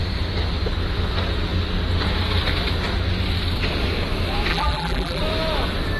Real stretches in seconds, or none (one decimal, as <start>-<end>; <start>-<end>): 0.0-4.5; 5.2-6.0